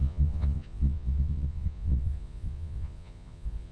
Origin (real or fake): fake